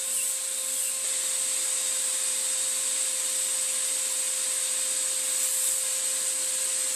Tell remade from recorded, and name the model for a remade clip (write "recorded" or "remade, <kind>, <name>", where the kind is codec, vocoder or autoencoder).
recorded